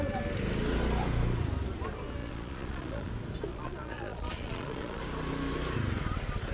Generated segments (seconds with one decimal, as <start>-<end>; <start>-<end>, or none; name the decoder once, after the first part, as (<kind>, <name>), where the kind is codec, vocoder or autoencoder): 2.2-3.1 (vocoder, Vocos); 3.5-5.0